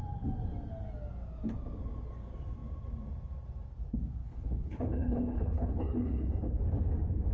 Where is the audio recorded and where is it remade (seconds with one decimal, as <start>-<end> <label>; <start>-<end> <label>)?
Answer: 0.0-4.2 recorded; 4.2-6.3 remade; 6.3-7.3 recorded